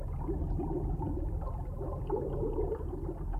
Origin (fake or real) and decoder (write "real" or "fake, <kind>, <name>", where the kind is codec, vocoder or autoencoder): real